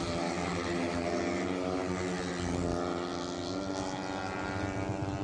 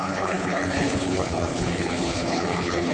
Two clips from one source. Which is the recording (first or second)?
first